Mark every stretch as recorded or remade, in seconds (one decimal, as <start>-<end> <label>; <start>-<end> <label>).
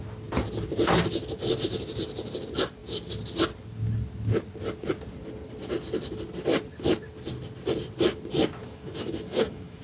0.0-8.6 recorded; 8.6-9.8 remade